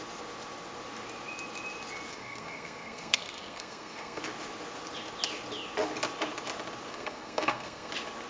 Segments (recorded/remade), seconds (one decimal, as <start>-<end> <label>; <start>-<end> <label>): 0.0-2.1 recorded; 2.1-4.2 remade; 4.2-6.9 recorded; 6.9-7.9 remade; 7.9-8.3 recorded